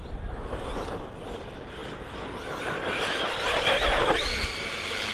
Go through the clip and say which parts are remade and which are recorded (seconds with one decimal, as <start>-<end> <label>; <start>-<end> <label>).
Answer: 0.0-5.1 recorded